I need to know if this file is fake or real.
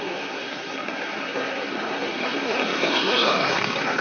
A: fake